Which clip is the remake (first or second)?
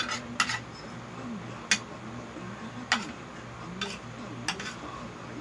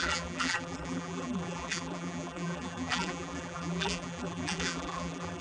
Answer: second